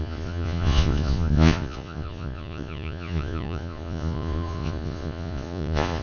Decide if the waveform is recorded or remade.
remade